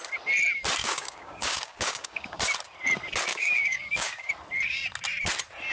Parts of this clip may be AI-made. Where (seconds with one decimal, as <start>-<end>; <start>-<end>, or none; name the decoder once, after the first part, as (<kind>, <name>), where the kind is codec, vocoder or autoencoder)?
0.8-2.4 (codec, DAC); 3.3-4.3